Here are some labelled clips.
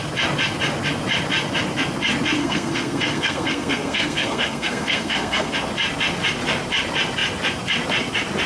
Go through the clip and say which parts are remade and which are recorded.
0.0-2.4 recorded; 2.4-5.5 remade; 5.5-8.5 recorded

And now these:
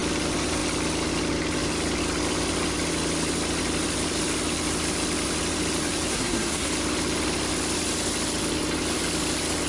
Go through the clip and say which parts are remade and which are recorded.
0.0-6.1 recorded; 6.1-6.7 remade; 6.7-9.7 recorded

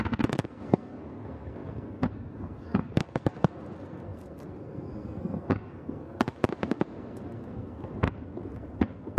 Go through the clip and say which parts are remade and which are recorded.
0.0-9.2 remade

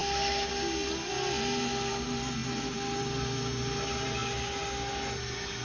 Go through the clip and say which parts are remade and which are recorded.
0.0-5.6 recorded